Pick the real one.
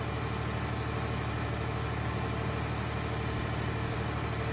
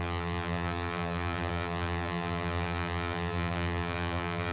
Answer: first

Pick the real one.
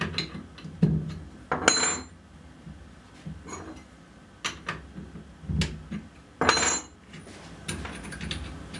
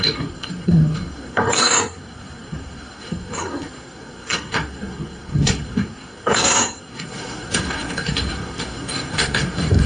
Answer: first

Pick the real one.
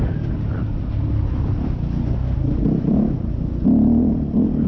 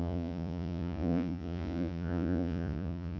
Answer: first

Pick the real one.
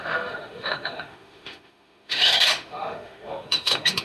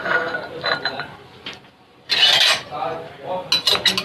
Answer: second